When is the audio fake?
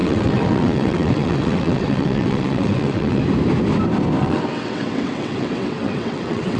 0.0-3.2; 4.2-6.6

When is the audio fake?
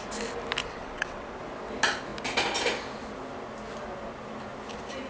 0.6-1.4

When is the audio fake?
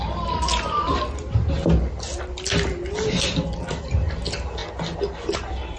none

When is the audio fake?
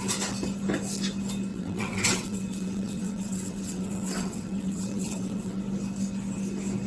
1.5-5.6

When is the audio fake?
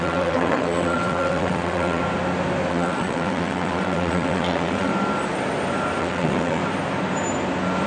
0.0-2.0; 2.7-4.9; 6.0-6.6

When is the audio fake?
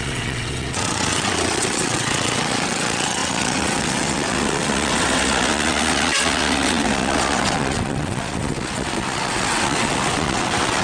0.0-10.8